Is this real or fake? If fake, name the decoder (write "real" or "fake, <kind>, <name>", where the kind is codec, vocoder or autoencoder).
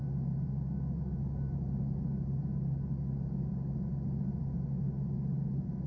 real